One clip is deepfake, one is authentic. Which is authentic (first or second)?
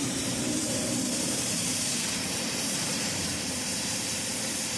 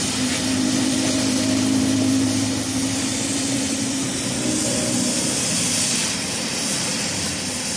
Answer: second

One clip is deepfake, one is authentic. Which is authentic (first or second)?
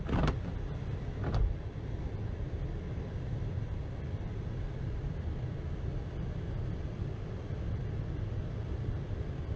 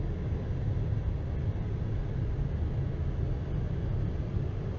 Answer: second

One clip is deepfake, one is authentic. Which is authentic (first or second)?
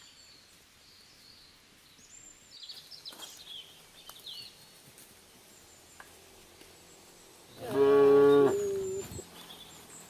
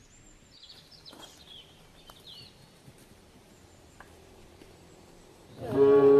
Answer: first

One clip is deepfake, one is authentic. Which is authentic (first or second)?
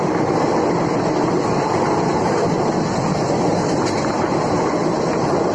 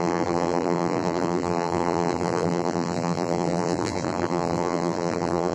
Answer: first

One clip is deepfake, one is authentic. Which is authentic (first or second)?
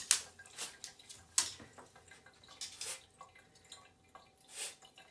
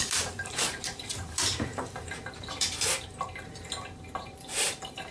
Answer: first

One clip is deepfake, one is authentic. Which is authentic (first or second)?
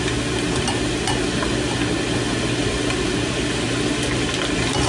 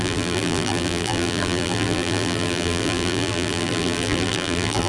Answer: first